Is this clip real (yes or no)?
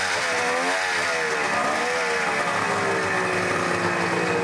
yes